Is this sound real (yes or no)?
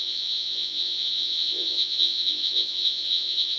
no